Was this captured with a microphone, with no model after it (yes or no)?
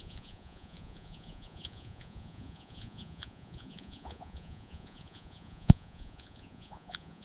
no